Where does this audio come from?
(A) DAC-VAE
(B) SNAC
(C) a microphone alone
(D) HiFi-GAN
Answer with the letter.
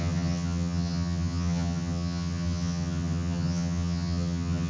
D